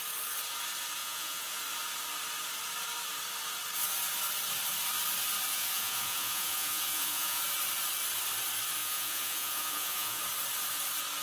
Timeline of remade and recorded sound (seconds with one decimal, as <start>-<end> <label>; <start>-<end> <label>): 0.0-1.0 recorded; 1.0-1.6 remade; 1.6-5.5 recorded; 5.5-7.4 remade; 7.4-8.8 recorded; 8.8-10.2 remade; 10.2-11.2 recorded

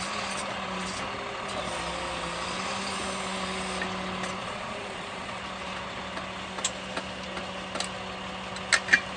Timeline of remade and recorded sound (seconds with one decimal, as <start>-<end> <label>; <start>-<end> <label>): 0.0-4.4 recorded; 4.4-5.4 remade; 5.4-9.2 recorded

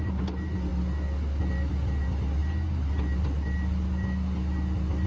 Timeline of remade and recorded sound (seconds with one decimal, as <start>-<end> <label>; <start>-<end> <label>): 0.0-5.1 recorded